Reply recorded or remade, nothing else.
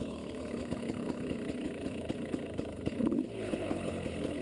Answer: remade